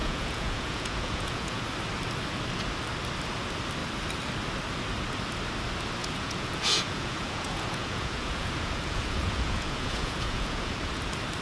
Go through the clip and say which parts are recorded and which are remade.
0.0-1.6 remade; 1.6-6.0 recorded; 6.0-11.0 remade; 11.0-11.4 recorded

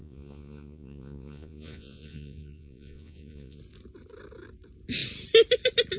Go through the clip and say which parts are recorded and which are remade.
0.0-3.6 remade; 3.6-6.0 recorded

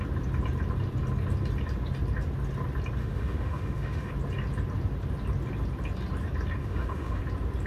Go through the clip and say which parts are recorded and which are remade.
0.0-3.0 recorded; 3.0-4.1 remade; 4.1-6.6 recorded; 6.6-7.2 remade; 7.2-7.7 recorded